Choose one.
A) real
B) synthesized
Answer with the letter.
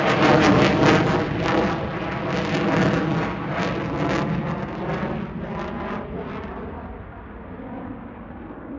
A